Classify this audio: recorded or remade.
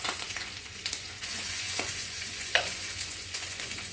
remade